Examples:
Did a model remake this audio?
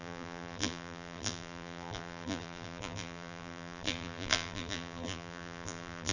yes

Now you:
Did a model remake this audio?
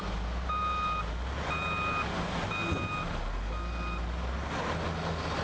no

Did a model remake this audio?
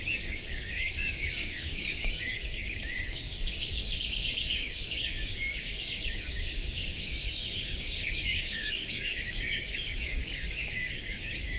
yes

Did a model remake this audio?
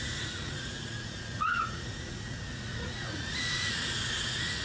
yes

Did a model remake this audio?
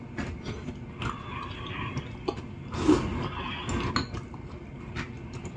no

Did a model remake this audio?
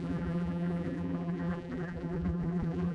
yes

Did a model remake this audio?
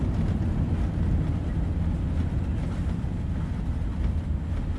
no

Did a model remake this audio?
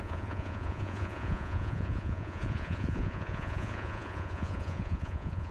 yes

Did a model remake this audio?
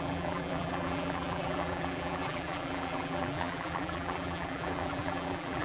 yes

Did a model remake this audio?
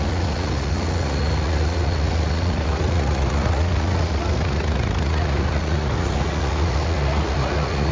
yes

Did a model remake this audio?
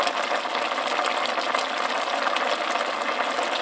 no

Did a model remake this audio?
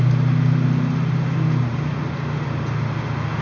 no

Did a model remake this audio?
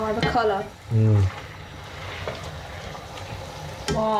no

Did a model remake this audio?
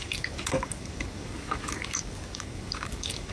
yes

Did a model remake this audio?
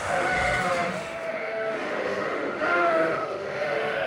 yes